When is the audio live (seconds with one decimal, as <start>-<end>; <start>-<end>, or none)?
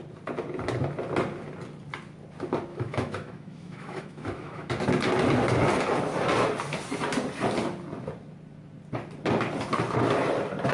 0.0-2.7; 4.7-10.7